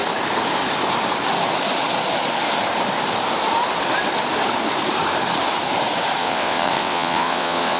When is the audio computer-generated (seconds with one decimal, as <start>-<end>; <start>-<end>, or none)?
6.2-7.8